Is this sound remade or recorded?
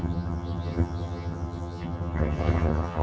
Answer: remade